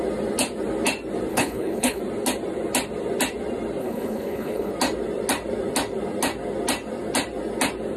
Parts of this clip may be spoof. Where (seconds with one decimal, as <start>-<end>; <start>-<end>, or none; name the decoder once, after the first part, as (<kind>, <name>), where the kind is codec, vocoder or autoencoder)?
1.3-2.0 (codec, HILCodec); 3.8-4.7